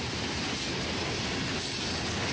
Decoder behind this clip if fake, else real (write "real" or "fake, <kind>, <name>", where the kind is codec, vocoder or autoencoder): real